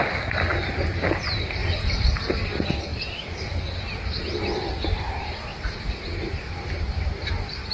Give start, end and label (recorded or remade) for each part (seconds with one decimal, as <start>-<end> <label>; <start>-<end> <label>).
0.0-1.6 recorded; 1.6-2.1 remade; 2.1-2.9 recorded; 2.9-7.3 remade; 7.3-7.7 recorded